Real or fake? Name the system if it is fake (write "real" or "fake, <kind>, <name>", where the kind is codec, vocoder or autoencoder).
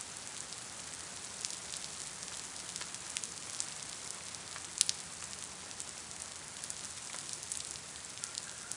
real